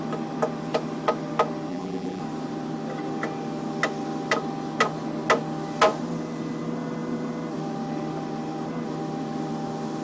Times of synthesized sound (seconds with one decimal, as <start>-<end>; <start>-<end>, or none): 1.7-2.2